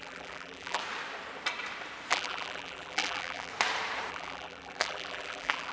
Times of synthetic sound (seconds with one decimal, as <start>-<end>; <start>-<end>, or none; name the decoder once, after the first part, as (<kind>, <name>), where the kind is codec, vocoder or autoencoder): 0.0-0.8 (vocoder, BigVGAN v2); 2.1-3.5; 4.1-5.7